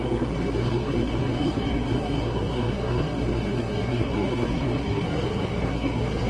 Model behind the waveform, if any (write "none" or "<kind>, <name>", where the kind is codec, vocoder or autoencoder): codec, SNAC